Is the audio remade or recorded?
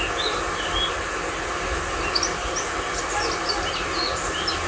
recorded